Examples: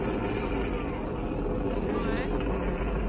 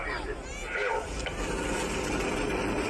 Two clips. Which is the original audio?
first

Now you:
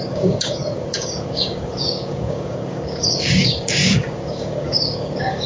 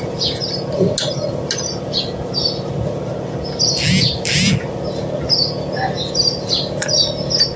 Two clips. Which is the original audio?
second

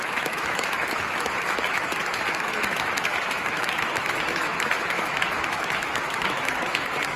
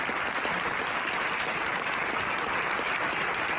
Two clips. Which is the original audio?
second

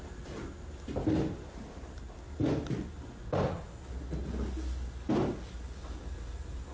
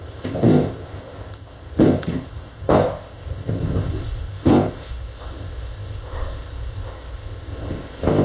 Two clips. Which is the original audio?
first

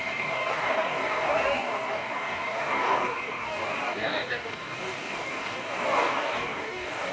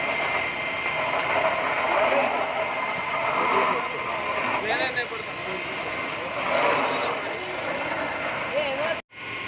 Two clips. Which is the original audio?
second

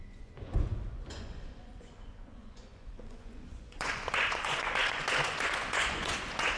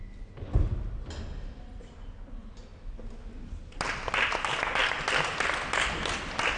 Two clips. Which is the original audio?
second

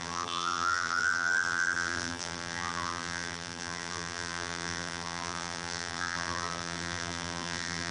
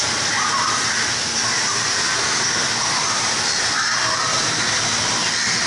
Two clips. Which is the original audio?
second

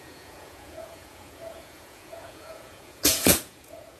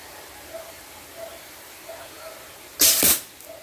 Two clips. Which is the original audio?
second